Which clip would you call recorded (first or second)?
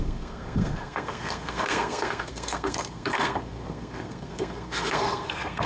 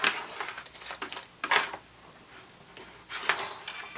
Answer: second